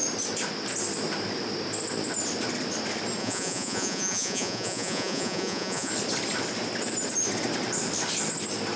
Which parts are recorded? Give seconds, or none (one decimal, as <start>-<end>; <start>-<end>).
0.0-3.2; 5.9-8.8